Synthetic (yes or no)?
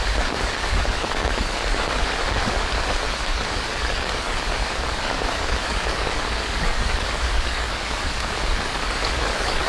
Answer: yes